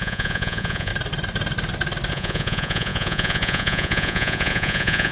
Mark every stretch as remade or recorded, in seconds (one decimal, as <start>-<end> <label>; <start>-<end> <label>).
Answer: 0.0-0.9 remade; 0.9-2.1 recorded; 2.1-5.1 remade